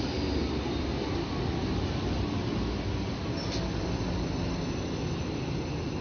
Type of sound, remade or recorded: recorded